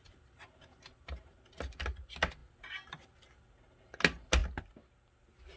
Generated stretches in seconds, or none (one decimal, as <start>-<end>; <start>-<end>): none